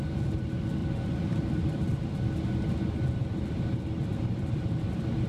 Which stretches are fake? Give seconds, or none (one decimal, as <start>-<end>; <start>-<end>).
0.8-2.0; 4.1-4.8